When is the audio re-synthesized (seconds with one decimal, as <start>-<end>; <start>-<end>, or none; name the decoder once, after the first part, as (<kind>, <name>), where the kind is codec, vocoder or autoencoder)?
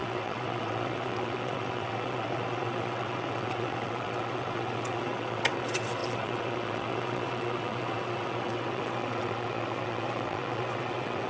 0.0-11.3 (vocoder, WaveNeXt)